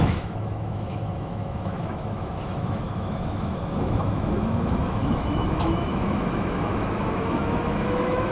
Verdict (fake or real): fake